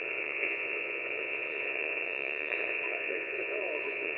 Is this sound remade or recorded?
remade